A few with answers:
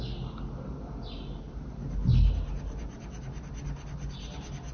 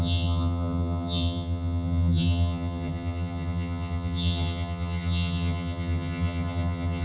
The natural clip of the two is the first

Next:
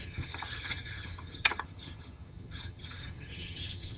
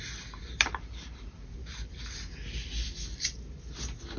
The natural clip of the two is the second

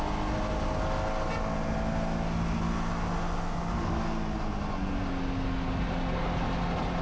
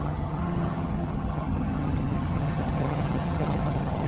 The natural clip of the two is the first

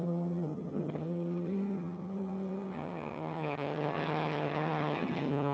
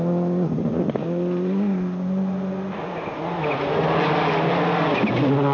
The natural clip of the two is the second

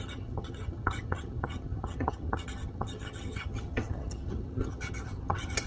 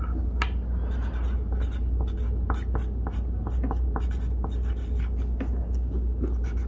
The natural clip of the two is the second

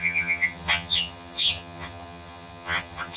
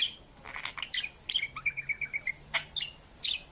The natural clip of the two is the second